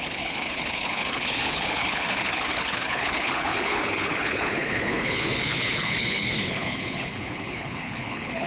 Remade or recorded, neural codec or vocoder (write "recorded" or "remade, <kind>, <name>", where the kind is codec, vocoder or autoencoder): remade, codec, HILCodec